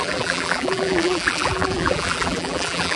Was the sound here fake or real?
fake